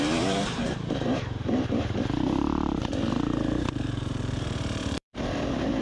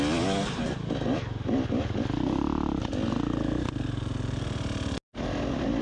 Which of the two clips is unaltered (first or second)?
second